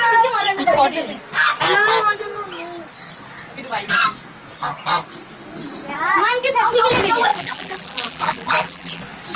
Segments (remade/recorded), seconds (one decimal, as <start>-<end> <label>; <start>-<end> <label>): 0.0-7.3 recorded; 7.3-9.0 remade; 9.0-9.4 recorded